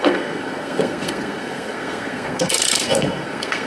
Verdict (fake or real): fake